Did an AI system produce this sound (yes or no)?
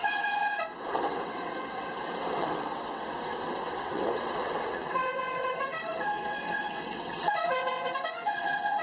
yes